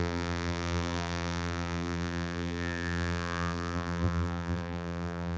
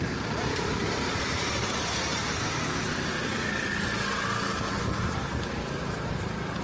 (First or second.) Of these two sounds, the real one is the second